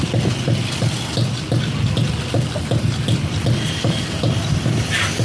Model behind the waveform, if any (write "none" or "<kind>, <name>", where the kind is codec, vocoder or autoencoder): none